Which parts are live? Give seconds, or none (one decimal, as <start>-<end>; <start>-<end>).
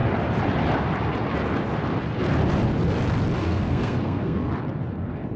0.0-3.4; 4.5-5.4